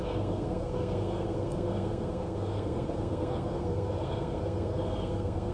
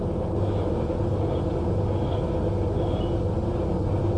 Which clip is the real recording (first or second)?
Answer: second